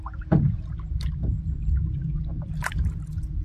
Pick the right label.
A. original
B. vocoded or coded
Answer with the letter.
A